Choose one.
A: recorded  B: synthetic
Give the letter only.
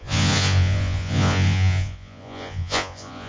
B